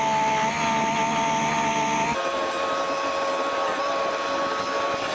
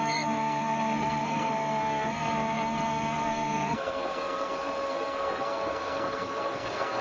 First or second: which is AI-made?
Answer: second